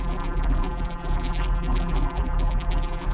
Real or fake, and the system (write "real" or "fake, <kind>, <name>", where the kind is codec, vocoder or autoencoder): fake, vocoder, BigVGAN v2